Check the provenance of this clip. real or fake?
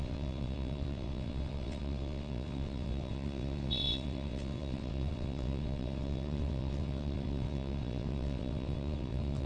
fake